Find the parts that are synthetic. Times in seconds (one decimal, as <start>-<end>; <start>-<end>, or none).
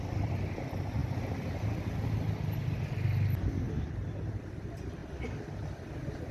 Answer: none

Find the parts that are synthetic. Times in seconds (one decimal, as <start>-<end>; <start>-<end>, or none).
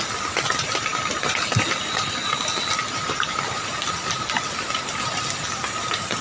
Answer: none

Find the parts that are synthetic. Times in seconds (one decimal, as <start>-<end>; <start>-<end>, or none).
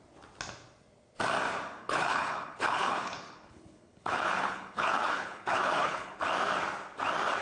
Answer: 1.8-6.2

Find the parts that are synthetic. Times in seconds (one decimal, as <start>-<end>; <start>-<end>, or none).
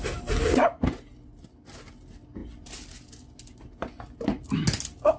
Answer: none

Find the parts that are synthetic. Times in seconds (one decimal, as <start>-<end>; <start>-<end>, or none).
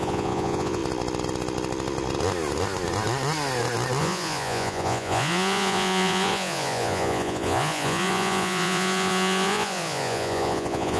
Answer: 0.0-0.8; 4.0-11.0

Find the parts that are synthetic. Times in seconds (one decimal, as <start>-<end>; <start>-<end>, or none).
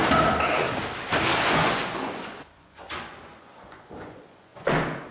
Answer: 1.4-5.1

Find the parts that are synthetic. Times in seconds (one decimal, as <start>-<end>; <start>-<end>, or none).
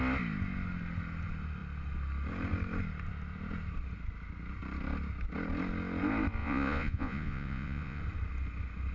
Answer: 6.4-8.0